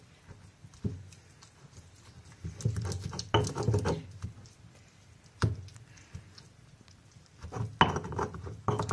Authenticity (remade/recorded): recorded